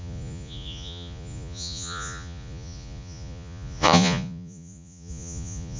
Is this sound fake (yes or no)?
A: yes